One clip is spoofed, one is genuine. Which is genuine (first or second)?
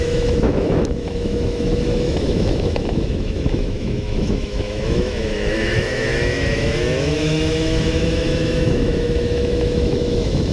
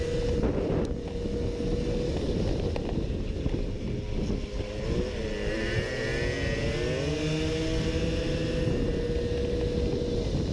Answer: second